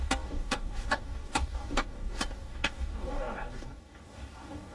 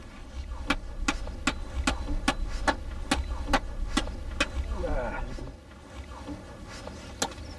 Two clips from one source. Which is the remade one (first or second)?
first